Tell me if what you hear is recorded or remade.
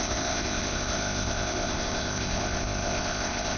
remade